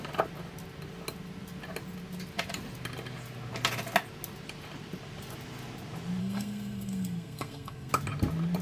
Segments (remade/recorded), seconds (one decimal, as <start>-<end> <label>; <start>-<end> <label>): 0.0-6.2 recorded; 6.2-7.9 remade; 7.9-8.6 recorded